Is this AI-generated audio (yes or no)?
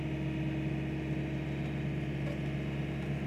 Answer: no